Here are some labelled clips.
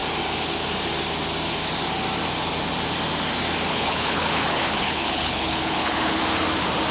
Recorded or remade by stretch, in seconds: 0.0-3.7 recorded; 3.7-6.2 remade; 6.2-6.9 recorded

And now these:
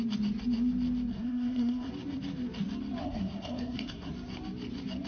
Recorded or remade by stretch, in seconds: 0.0-1.1 recorded; 1.1-1.9 remade; 1.9-3.0 recorded; 3.0-4.1 remade; 4.1-5.1 recorded

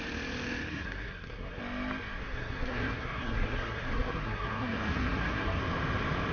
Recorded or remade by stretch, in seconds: 0.0-0.7 recorded; 0.7-1.6 remade; 1.6-2.2 recorded; 2.2-5.6 remade; 5.6-6.3 recorded

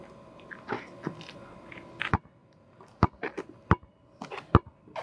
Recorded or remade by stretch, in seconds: 0.0-5.0 recorded

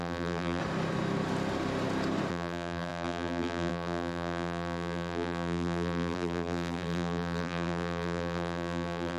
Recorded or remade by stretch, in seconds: 0.0-0.6 remade; 0.6-2.3 recorded; 2.3-9.2 remade

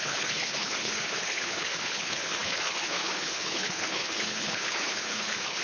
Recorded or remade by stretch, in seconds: 0.0-5.6 remade

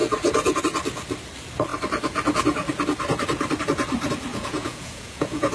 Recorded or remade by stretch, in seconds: 0.0-4.3 recorded; 4.3-5.5 remade

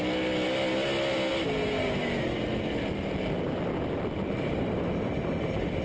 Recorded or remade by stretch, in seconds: 0.0-5.8 recorded